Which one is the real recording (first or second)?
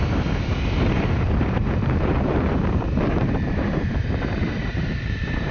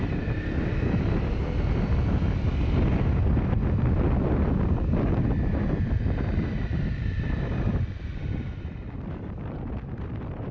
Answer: second